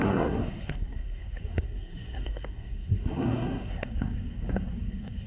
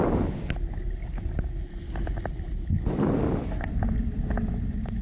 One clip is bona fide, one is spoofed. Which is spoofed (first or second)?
first